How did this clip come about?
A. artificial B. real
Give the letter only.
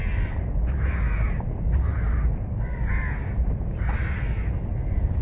B